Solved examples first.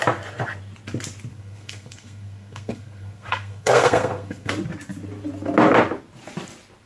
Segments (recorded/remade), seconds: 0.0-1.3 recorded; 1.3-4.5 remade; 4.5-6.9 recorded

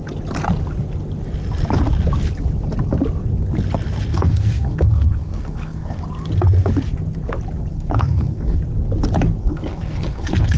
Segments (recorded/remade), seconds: 0.0-4.1 recorded; 4.1-6.0 remade; 6.0-7.7 recorded; 7.7-8.6 remade; 8.6-9.4 recorded; 9.4-10.6 remade

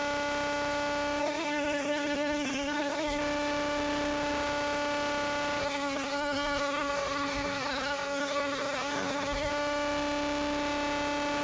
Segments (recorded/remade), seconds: 0.0-1.2 recorded; 1.2-3.2 remade; 3.2-5.6 recorded; 5.6-9.5 remade; 9.5-11.4 recorded

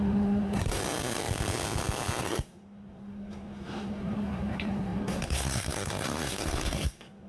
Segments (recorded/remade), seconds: 0.0-0.8 remade; 0.8-2.2 recorded; 2.2-7.3 remade

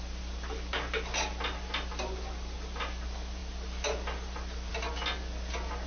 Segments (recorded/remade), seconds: 0.0-5.9 recorded

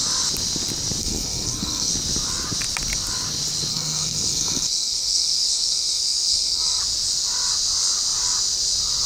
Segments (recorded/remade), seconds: 0.0-1.0 recorded; 1.0-1.9 remade; 1.9-3.7 recorded; 3.7-6.8 remade; 6.8-9.1 recorded

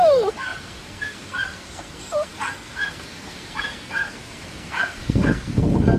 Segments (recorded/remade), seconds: 0.0-6.0 remade

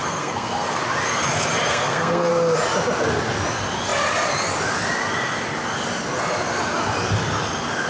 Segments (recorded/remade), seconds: 0.0-0.8 remade; 0.8-1.7 recorded; 1.7-2.3 remade; 2.3-7.9 recorded